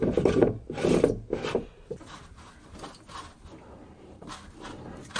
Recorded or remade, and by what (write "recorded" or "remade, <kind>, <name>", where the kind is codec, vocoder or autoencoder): remade, vocoder, BigVGAN v2